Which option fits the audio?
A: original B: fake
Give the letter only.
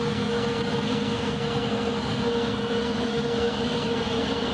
B